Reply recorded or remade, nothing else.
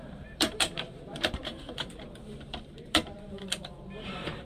remade